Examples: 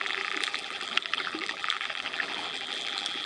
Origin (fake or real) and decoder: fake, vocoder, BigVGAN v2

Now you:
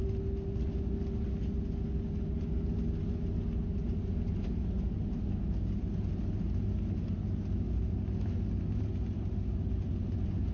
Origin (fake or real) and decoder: real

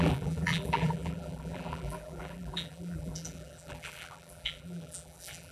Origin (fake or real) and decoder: fake, vocoder, BigVGAN v2